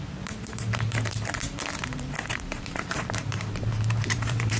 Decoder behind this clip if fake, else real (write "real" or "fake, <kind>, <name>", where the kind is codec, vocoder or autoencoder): fake, vocoder, BigVGAN v2